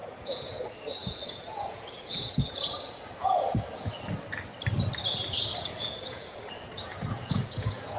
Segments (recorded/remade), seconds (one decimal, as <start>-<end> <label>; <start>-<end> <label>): 0.0-0.6 remade; 0.6-1.0 recorded; 1.0-3.9 remade; 3.9-5.5 recorded; 5.5-8.0 remade